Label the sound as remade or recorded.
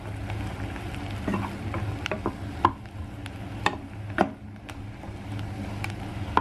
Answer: recorded